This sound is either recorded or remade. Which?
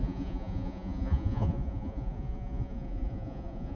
remade